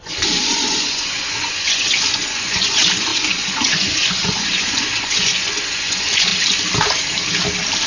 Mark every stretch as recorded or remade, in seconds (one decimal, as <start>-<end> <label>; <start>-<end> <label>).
0.0-6.3 remade; 6.3-7.9 recorded